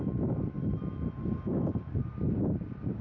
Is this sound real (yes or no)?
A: yes